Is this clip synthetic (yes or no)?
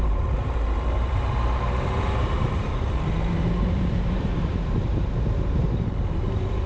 yes